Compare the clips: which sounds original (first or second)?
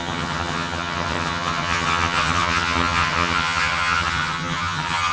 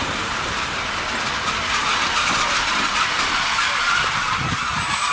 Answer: second